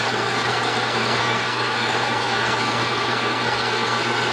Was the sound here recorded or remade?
remade